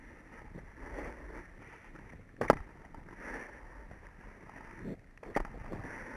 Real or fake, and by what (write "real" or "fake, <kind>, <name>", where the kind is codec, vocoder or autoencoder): real